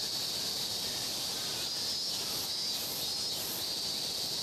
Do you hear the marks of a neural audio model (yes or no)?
no